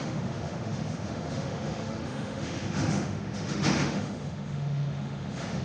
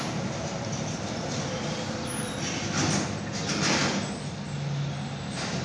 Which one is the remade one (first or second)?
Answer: first